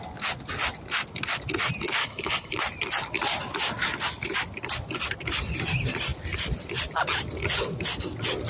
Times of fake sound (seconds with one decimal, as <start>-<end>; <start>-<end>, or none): 2.0-2.6